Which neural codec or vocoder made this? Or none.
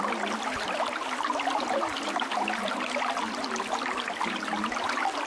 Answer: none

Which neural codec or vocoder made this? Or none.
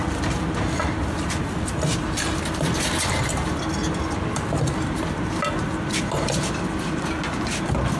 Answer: none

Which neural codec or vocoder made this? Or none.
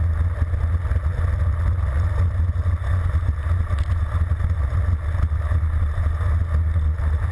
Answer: none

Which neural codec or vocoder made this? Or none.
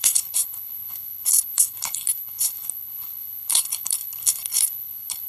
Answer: codec, HILCodec